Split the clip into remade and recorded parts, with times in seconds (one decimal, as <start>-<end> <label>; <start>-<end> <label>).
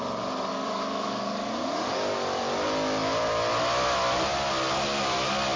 0.0-0.5 recorded; 0.5-2.4 remade; 2.4-5.6 recorded